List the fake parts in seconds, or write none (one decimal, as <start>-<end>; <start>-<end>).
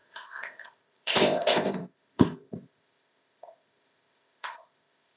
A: 0.0-5.2